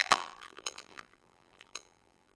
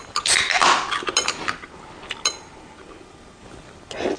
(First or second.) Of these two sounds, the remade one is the first